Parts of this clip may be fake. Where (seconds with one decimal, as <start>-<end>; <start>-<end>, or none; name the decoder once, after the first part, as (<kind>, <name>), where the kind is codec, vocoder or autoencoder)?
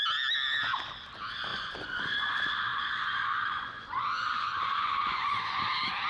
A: 1.5-2.3 (vocoder, Vocos); 2.7-5.6